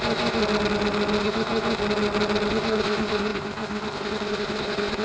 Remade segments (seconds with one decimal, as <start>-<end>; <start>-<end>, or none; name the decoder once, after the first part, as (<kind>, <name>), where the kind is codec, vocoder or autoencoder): 0.0-0.4 (codec, ZipCodec); 1.2-1.8; 2.5-5.0